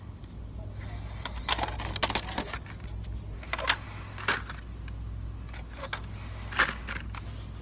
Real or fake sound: real